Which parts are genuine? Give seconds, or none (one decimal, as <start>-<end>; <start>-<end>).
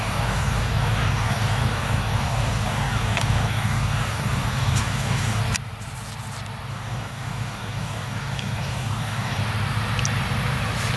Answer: 5.4-6.7; 9.4-11.0